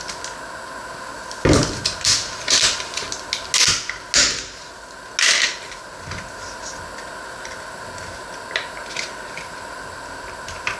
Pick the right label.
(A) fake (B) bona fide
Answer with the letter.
B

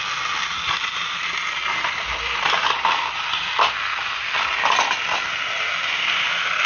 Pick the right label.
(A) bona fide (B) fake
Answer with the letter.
A